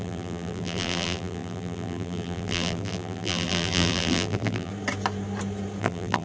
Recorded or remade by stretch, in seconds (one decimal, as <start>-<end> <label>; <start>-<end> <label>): 0.0-4.7 remade; 4.7-5.8 recorded; 5.8-6.2 remade